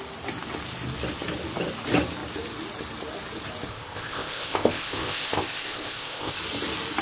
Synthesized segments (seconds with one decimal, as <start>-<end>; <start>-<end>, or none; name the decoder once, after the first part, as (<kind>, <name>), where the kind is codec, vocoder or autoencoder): 3.7-6.4 (codec, ZipCodec)